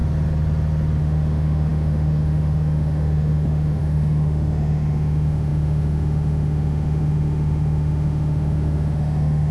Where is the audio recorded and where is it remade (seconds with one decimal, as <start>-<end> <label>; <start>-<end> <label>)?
0.0-1.0 recorded; 1.0-9.5 remade